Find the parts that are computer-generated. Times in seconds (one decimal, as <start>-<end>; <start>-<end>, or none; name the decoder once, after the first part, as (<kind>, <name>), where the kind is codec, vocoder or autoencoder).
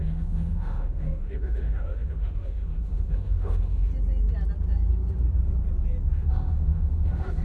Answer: 0.0-3.9 (autoencoder, DAC-VAE); 6.1-7.4